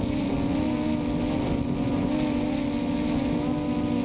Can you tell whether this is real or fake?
real